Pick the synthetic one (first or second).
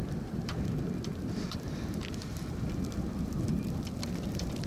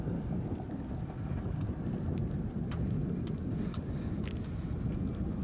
first